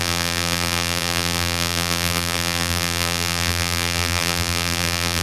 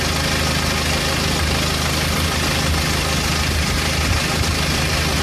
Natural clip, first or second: second